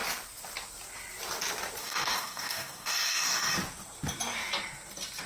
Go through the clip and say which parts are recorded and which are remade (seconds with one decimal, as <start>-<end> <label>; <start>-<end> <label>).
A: 0.0-1.8 recorded; 1.8-3.5 remade; 3.5-5.3 recorded